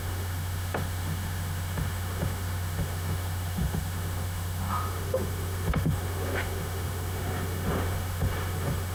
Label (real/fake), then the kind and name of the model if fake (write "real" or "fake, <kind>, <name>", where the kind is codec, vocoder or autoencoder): fake, autoencoder, DAC-VAE